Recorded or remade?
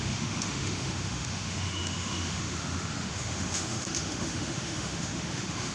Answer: remade